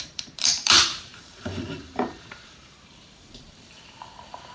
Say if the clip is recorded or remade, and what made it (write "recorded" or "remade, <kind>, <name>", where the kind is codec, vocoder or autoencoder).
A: remade, vocoder, BigVGAN v2